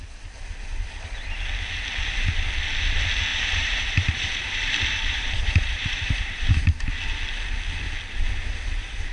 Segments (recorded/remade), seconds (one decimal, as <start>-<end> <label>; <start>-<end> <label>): 0.0-3.3 recorded; 3.3-6.9 remade; 6.9-9.1 recorded